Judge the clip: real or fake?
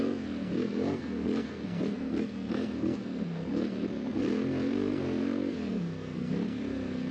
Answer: fake